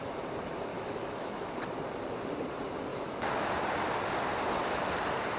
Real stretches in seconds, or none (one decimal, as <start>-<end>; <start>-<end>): 0.0-0.7; 1.6-2.9; 3.5-5.4